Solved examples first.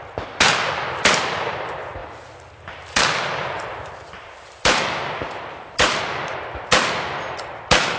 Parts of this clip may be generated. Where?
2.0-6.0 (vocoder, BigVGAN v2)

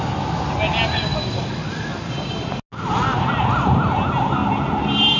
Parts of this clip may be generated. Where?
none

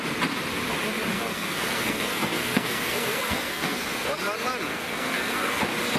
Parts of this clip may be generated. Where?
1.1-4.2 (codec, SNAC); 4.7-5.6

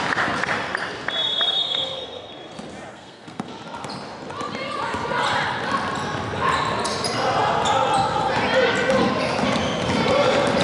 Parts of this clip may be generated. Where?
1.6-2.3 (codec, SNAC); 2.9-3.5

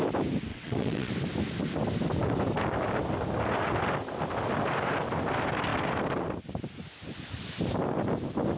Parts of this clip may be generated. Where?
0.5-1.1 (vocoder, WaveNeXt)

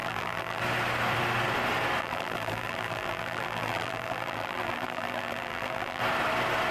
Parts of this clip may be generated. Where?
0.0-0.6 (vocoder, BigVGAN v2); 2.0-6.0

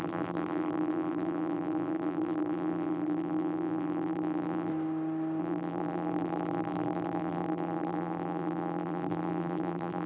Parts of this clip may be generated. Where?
0.0-4.7 (vocoder, BigVGAN v2); 5.4-10.1